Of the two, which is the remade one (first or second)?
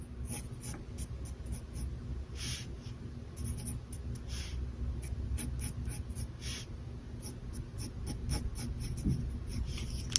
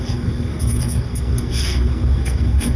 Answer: second